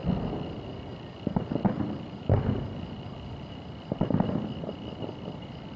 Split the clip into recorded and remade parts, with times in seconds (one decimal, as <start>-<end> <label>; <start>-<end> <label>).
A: 0.0-5.8 recorded